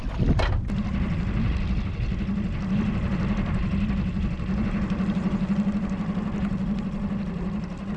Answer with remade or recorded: recorded